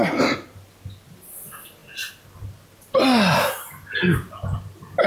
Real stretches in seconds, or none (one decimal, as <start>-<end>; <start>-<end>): 1.8-5.1